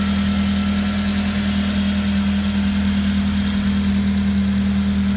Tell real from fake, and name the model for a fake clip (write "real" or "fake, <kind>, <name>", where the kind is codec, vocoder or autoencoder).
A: real